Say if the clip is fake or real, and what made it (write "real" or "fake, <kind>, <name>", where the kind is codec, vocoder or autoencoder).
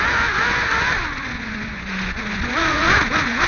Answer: fake, vocoder, Vocos